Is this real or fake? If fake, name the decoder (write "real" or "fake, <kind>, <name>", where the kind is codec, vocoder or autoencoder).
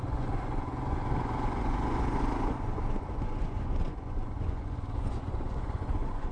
fake, vocoder, Vocos